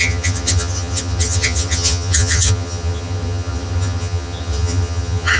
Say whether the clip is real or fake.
fake